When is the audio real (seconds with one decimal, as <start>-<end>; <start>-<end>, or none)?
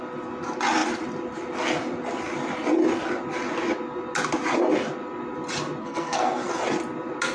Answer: 0.0-5.8; 6.5-7.3